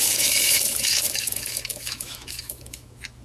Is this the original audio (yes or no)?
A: no